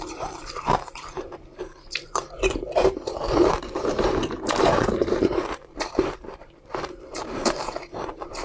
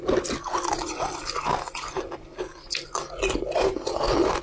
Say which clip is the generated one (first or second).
first